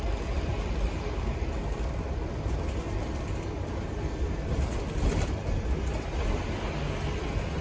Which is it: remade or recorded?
recorded